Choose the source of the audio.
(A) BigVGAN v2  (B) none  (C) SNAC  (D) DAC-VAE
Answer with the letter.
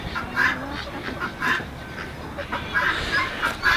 B